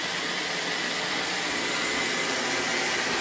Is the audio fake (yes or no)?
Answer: no